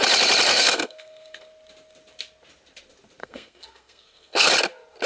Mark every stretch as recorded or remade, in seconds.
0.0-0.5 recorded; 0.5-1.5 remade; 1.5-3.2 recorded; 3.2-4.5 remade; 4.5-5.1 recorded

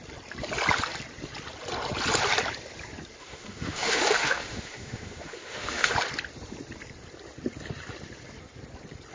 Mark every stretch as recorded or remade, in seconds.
0.0-3.2 recorded; 3.2-5.9 remade; 5.9-9.1 recorded